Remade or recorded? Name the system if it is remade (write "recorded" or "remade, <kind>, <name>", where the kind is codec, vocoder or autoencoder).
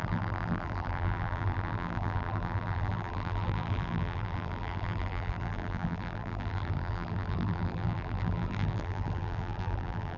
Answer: remade, vocoder, BigVGAN v2